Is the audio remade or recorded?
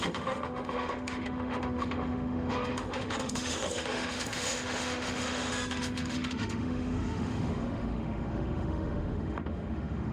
remade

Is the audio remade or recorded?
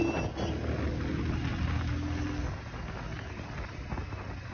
recorded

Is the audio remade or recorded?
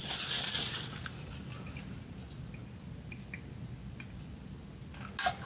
recorded